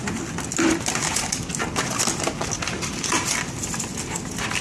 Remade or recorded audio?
recorded